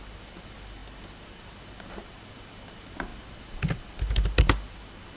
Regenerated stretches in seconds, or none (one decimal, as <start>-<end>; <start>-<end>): none